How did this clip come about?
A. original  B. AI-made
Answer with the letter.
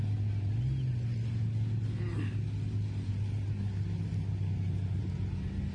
A